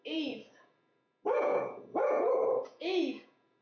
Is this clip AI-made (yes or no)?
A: yes